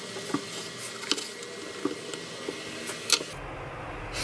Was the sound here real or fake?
real